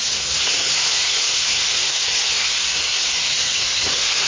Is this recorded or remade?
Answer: remade